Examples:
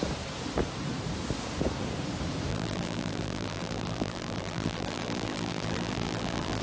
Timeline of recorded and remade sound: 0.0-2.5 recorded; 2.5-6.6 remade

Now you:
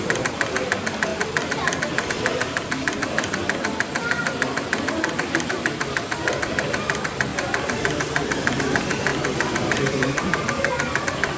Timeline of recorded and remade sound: 0.0-1.1 remade; 1.1-2.1 recorded; 2.1-11.4 remade

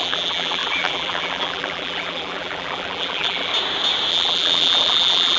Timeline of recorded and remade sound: 0.0-3.5 remade; 3.5-4.1 recorded; 4.1-5.4 remade